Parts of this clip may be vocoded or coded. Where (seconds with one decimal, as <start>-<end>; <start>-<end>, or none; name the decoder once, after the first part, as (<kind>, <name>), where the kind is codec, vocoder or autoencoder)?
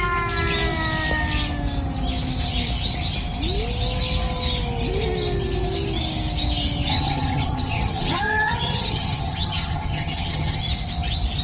6.9-10.6 (vocoder, HiFi-GAN)